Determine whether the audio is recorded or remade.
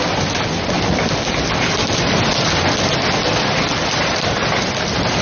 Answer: recorded